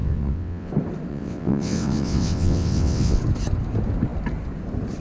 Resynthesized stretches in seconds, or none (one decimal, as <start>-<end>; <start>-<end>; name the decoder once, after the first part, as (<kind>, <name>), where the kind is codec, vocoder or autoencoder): 0.0-0.7 (vocoder, WaveNeXt); 1.1-3.2